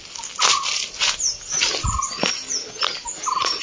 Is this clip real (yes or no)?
yes